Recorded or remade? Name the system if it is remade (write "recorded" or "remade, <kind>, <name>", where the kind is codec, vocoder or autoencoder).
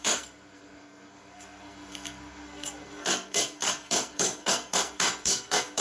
remade, codec, SNAC